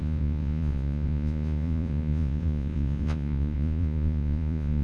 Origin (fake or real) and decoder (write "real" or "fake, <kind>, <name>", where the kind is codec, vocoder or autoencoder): fake, vocoder, Vocos